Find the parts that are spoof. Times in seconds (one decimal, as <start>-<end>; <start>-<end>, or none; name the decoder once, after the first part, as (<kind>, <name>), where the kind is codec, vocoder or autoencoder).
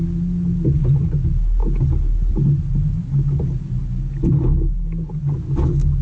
none